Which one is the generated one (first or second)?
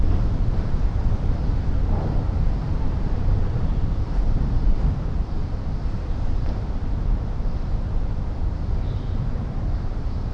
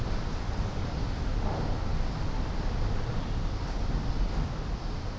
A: first